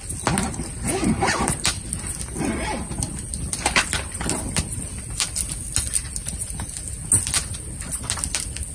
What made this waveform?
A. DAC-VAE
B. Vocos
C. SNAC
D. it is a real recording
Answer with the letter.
D